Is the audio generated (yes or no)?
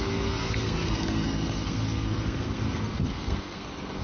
yes